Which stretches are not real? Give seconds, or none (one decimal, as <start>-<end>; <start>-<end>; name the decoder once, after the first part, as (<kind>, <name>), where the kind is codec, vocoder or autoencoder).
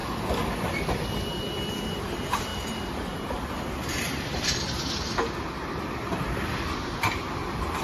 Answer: 0.6-7.8 (vocoder, BigVGAN v2)